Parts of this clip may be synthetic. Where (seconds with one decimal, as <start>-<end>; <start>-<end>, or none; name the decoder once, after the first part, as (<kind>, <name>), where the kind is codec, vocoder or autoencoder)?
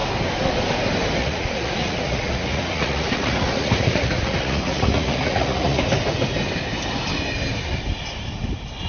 1.2-5.8 (vocoder, Vocos)